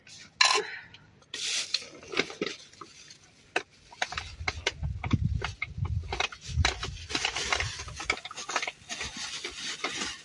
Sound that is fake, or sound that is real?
real